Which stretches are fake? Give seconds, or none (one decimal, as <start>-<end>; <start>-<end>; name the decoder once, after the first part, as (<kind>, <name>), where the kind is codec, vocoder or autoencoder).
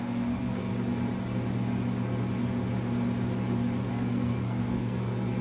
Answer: 0.0-0.7 (codec, SNAC); 3.9-5.4